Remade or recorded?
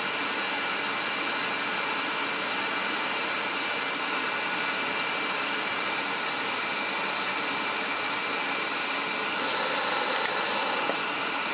recorded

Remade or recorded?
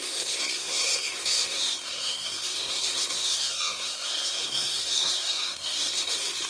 remade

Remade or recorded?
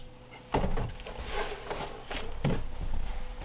recorded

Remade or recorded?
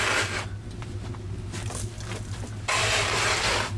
recorded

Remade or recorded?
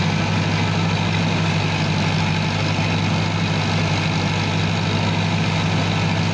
recorded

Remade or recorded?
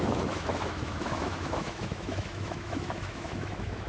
remade